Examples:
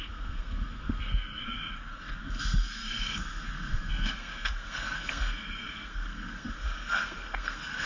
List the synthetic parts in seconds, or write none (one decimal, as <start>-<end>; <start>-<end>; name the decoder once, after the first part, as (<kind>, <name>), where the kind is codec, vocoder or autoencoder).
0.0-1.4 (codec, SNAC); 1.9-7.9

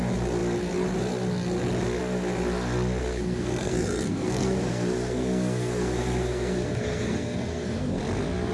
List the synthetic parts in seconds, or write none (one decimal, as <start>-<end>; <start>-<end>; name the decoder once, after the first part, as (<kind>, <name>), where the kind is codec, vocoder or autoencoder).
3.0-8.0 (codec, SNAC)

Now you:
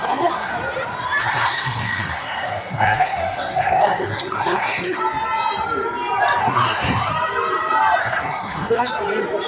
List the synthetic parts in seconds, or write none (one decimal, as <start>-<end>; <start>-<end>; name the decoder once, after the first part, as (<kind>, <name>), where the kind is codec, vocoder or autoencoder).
0.0-0.5 (codec, SNAC); 1.2-5.0; 6.4-7.1; 8.0-8.9

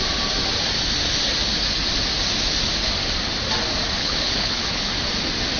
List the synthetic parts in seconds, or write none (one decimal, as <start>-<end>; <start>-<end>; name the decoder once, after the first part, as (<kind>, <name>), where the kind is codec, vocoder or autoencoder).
4.0-4.9 (codec, HILCodec)

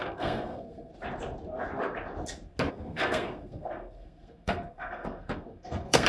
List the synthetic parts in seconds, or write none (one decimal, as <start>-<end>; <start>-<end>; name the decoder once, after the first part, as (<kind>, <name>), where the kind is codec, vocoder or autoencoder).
0.0-0.9 (codec, SNAC); 2.7-6.1

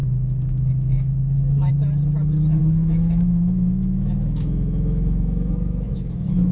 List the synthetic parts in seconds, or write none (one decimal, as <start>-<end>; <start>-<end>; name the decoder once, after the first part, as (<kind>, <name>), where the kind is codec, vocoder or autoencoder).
0.0-1.7 (autoencoder, DAC-VAE); 2.6-6.5